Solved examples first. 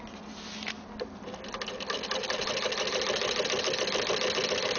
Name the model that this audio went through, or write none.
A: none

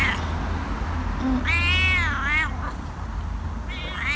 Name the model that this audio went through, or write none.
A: none